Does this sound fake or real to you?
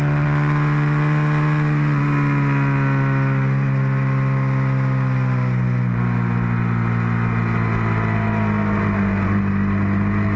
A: real